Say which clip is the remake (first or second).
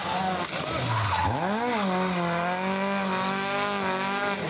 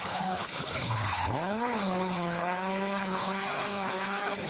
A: second